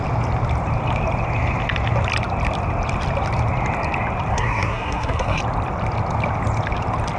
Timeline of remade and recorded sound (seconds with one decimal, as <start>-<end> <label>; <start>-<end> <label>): 0.0-4.3 recorded; 4.3-5.4 remade; 5.4-7.2 recorded